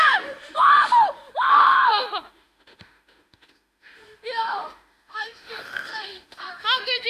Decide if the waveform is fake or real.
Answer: fake